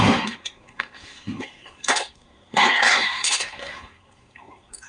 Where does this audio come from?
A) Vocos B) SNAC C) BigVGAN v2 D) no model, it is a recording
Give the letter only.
B